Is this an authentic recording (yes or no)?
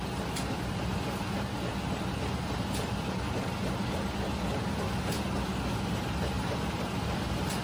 yes